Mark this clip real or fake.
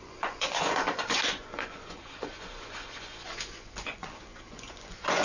fake